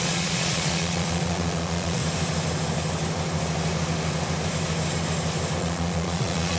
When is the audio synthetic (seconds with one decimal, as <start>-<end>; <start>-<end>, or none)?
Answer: 0.0-2.0; 5.6-6.6